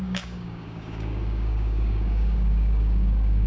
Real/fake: fake